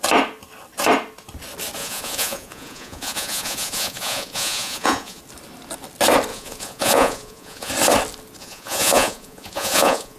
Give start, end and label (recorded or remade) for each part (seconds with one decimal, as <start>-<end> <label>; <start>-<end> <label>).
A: 0.0-1.8 recorded; 1.8-5.2 remade; 5.2-6.3 recorded; 6.3-7.7 remade; 7.7-8.4 recorded; 8.4-10.2 remade